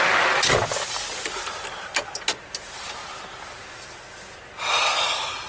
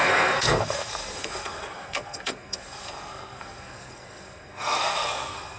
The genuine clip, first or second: first